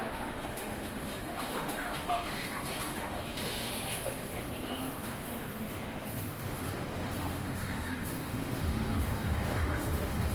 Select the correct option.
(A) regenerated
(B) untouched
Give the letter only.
A